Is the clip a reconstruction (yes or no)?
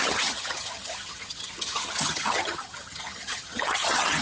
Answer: yes